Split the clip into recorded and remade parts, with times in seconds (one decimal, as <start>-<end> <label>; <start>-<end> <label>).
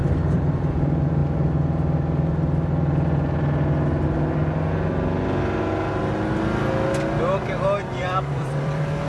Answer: 0.0-0.7 remade; 0.7-7.9 recorded; 7.9-9.1 remade